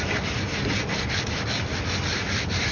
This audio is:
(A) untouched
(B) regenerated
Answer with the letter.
A